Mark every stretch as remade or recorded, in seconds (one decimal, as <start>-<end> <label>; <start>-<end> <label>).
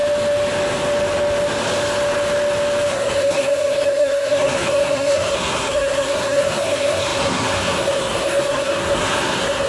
0.0-2.9 recorded; 2.9-9.7 remade